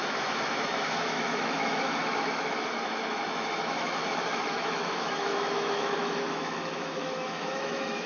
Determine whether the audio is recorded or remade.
remade